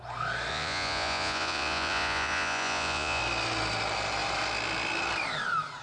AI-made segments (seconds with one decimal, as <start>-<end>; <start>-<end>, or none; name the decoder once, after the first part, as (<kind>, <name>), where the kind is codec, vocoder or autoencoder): 0.5-3.2 (vocoder, Vocos)